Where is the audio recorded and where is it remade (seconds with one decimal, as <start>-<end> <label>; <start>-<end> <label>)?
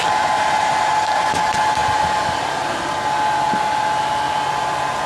0.0-1.8 remade; 1.8-4.5 recorded; 4.5-5.1 remade